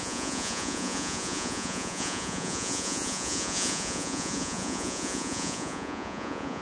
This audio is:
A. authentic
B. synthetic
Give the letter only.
B